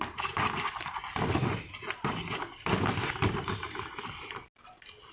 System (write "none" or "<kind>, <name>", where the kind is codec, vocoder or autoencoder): none